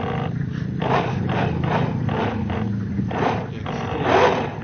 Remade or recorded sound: recorded